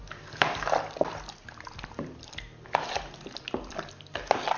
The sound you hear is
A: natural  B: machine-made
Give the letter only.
A